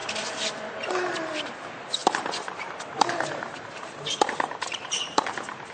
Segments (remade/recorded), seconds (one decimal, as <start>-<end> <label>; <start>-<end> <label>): 0.0-2.0 recorded; 2.0-5.7 remade